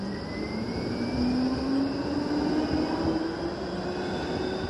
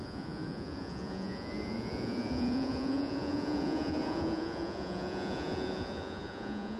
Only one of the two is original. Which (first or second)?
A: first